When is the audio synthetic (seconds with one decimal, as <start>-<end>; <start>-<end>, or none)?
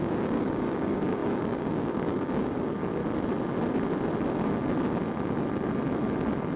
0.0-3.0